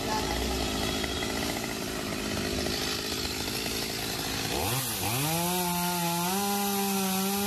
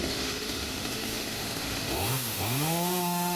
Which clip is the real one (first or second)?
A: first